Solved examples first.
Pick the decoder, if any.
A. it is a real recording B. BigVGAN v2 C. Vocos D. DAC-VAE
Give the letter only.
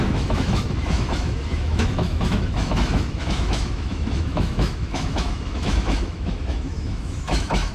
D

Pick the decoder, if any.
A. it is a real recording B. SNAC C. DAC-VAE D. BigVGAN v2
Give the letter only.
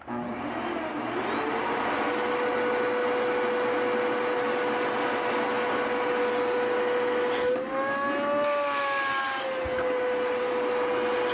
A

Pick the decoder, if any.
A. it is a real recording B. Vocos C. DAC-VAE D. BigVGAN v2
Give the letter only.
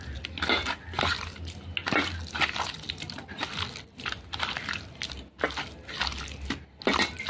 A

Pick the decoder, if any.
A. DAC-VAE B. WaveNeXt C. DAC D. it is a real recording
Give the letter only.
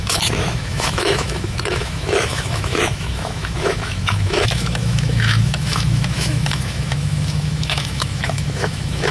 A